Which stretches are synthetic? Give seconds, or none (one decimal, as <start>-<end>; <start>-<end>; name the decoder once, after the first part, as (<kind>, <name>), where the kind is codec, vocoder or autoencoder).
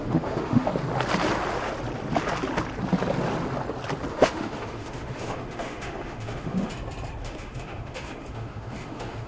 0.0-0.7 (autoencoder, DAC-VAE); 4.1-6.7; 7.2-9.3